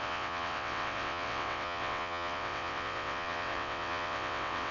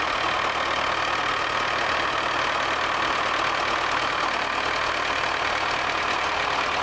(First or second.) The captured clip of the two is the second